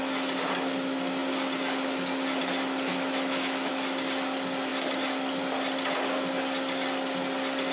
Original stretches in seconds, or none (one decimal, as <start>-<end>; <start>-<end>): 0.0-2.9; 3.7-7.7